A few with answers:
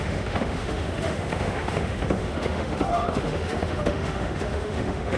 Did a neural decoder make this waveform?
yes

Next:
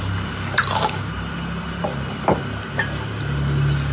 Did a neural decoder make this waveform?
no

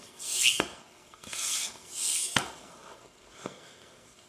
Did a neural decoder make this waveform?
yes